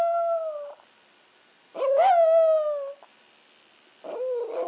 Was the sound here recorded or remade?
recorded